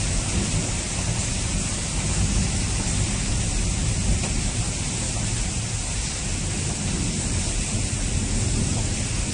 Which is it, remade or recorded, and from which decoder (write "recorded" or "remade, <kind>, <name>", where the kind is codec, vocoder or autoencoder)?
recorded